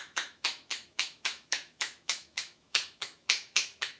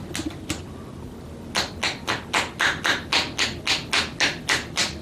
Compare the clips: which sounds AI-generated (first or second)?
first